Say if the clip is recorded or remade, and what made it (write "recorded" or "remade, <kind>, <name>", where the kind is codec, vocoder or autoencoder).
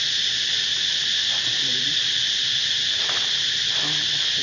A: recorded